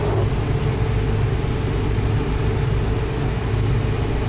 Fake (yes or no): no